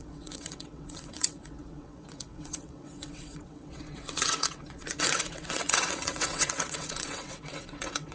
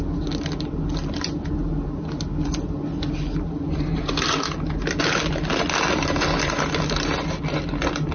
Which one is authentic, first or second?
second